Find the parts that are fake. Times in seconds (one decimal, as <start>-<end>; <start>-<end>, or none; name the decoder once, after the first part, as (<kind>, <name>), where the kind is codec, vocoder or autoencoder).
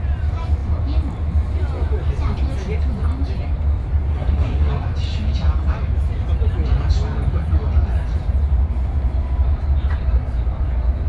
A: 4.1-4.7 (codec, SNAC)